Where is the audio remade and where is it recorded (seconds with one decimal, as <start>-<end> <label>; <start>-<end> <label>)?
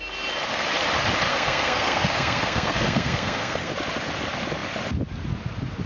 0.0-1.3 recorded; 1.3-3.7 remade; 3.7-5.9 recorded